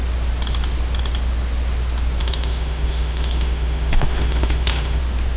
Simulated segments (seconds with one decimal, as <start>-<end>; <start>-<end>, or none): 2.2-5.0